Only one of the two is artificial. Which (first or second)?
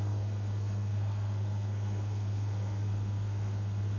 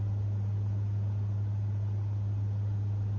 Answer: first